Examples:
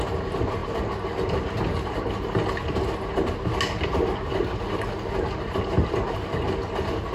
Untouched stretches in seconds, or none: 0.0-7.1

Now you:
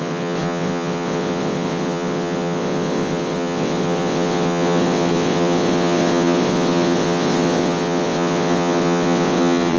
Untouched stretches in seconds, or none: none

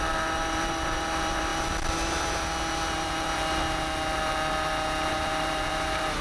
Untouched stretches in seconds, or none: 1.5-5.1

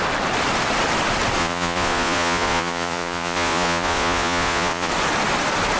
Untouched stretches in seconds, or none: 0.0-1.4; 4.9-5.8

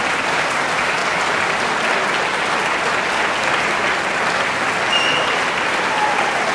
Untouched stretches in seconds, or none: 1.0-4.9

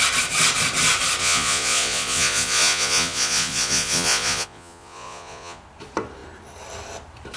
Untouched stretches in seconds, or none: 0.0-1.2; 5.6-7.4